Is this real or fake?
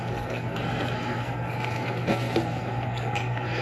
fake